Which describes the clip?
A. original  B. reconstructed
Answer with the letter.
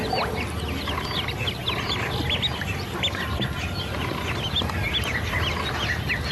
A